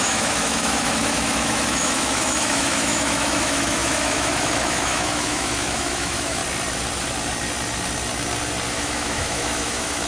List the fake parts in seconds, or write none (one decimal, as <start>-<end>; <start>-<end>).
0.0-6.4; 8.7-10.1